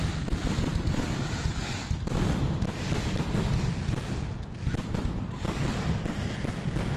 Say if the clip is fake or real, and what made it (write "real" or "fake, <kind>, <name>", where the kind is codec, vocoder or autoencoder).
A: real